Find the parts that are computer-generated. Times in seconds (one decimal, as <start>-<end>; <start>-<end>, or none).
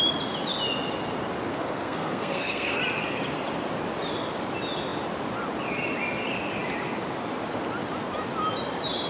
1.5-2.8